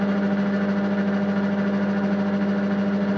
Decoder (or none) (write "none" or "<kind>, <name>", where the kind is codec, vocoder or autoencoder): none